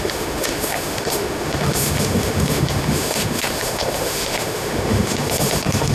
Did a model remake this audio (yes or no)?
yes